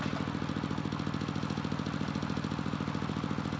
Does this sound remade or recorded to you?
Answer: recorded